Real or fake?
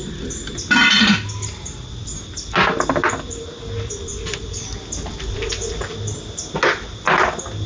real